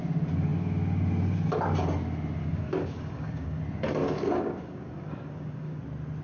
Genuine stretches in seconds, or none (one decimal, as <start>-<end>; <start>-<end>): 0.0-2.4; 3.6-4.0; 5.8-6.2